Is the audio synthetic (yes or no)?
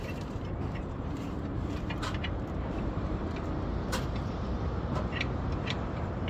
yes